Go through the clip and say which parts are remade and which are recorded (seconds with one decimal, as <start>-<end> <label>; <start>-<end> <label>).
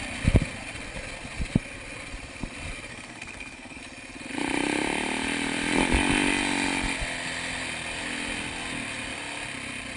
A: 0.0-2.9 recorded; 2.9-3.8 remade; 3.8-10.0 recorded